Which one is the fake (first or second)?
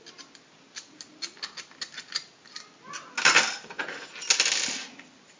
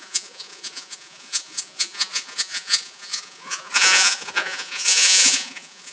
second